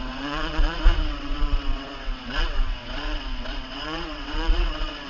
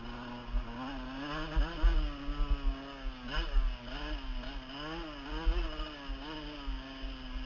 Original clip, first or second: second